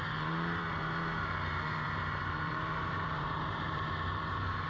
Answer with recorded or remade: remade